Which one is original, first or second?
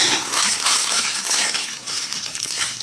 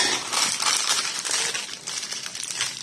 second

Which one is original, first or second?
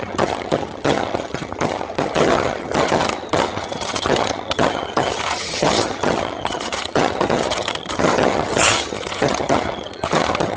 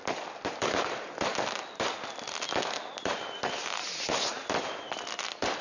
second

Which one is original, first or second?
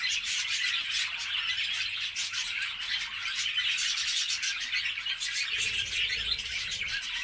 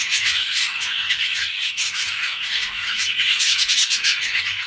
first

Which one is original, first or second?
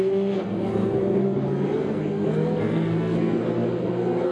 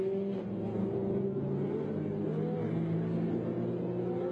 second